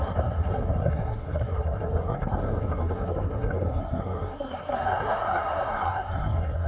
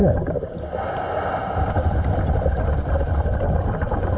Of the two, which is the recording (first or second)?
second